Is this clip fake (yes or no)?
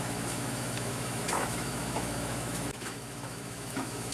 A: yes